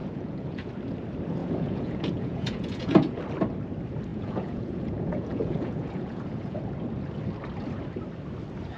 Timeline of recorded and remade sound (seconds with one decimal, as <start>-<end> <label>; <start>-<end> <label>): 0.0-0.7 remade; 0.7-1.4 recorded; 1.4-3.2 remade; 3.2-4.1 recorded; 4.1-6.6 remade; 6.6-8.8 recorded